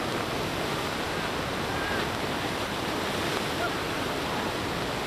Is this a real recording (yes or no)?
yes